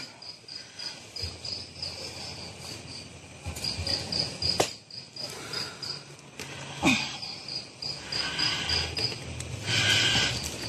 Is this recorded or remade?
recorded